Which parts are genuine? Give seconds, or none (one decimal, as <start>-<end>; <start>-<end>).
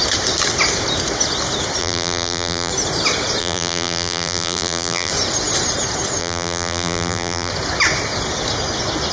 0.0-1.8; 2.7-3.4; 5.1-6.2; 7.5-9.1